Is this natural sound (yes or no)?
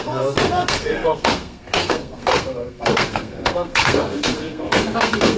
no